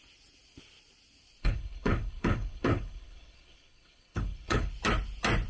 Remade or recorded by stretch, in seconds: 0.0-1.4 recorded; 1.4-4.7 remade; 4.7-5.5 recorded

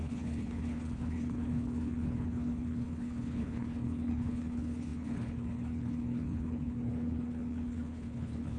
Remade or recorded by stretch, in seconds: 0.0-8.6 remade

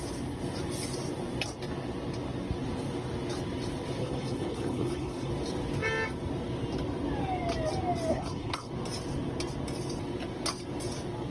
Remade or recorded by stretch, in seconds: 0.0-4.0 recorded; 4.0-5.3 remade; 5.3-8.1 recorded; 8.1-8.7 remade; 8.7-11.3 recorded